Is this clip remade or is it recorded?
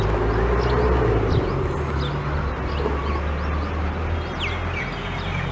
recorded